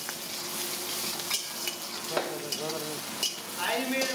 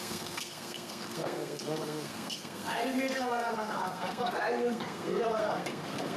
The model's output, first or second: second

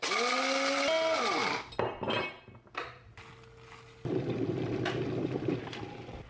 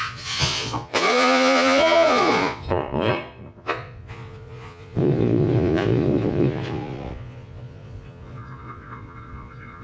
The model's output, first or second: second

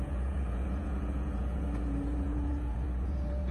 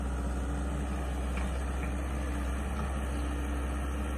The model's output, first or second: first